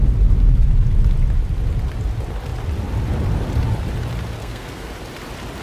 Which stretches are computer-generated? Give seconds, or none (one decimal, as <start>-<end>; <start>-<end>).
4.4-4.9